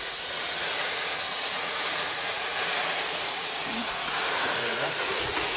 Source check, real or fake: fake